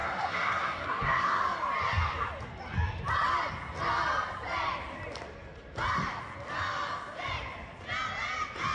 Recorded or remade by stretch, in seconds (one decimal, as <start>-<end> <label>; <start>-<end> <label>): 0.0-1.4 remade; 1.4-8.7 recorded